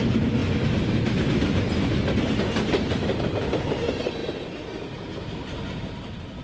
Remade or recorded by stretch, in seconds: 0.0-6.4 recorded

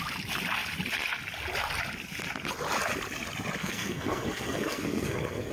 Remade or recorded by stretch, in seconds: 0.0-3.6 recorded; 3.6-5.5 remade

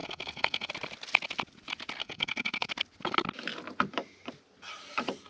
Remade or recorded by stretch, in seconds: 0.0-0.7 remade; 0.7-2.0 recorded; 2.0-2.7 remade; 2.7-5.3 recorded

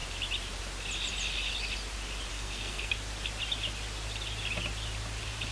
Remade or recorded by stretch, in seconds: 0.0-2.3 recorded; 2.3-2.9 remade; 2.9-5.5 recorded